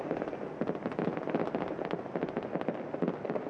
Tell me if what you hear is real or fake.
real